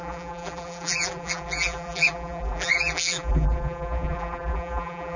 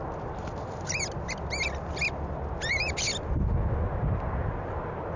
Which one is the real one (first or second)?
second